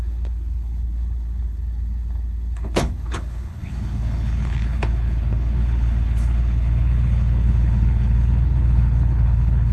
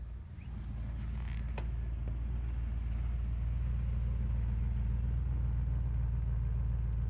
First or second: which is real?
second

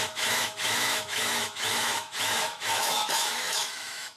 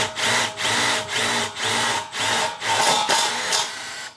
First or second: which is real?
second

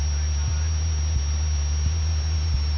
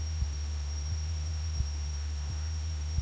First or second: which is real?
first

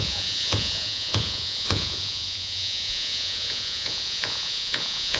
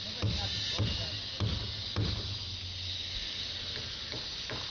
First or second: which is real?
second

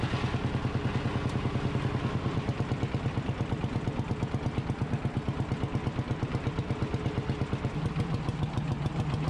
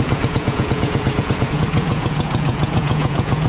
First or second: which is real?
first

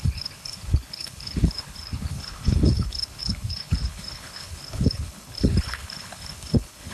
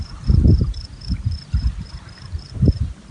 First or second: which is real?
second